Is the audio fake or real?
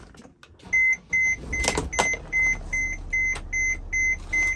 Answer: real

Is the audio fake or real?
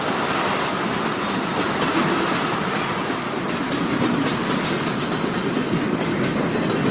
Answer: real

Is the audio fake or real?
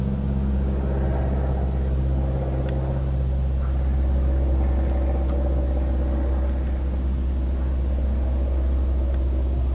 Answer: real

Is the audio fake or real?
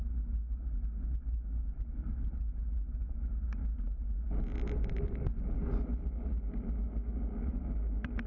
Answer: real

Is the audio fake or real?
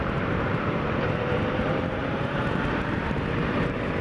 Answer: fake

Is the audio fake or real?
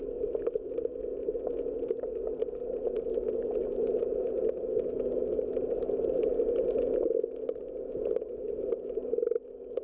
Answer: real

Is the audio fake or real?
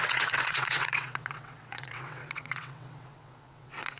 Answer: fake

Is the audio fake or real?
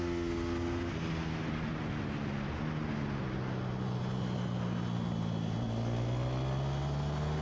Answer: real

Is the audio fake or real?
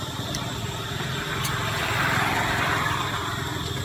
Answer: real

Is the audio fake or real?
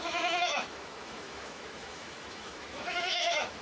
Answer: fake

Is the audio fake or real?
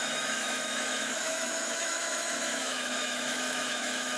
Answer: fake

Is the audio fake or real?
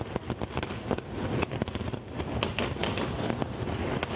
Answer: real